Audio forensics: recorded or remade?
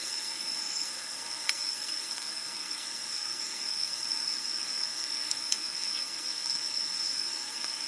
remade